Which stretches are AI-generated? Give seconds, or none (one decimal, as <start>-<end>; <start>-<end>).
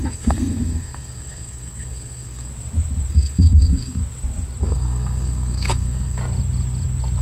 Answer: 0.0-2.5; 3.1-4.0; 4.6-6.2